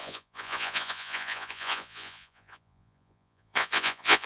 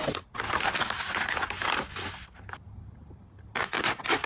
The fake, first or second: first